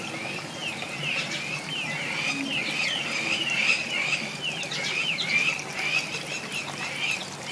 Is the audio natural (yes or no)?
yes